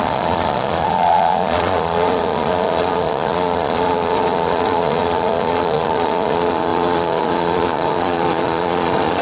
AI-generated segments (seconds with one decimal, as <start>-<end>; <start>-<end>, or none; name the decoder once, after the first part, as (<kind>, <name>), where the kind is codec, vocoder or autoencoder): 0.0-9.2 (vocoder, Vocos)